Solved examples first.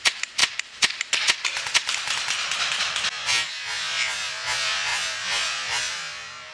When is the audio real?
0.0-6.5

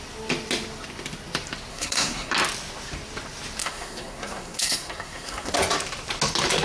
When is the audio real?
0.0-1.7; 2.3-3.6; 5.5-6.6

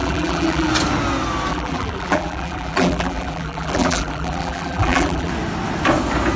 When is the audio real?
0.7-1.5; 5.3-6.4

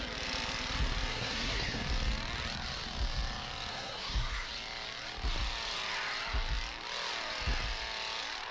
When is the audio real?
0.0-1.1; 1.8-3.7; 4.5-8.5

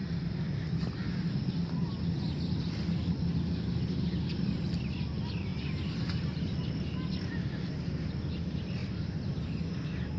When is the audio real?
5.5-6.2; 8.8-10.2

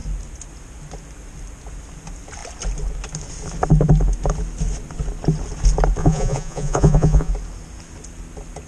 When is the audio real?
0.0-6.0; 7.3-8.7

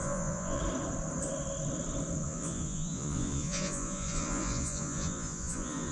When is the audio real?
0.6-2.2

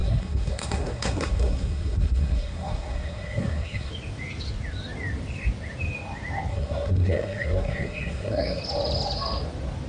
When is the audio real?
3.9-6.5; 8.6-9.9